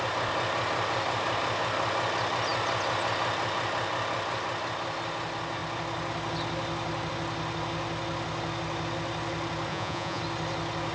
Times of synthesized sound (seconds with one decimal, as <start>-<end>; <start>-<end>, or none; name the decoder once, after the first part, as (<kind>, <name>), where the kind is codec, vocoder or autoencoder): 9.7-10.2 (vocoder, Vocos)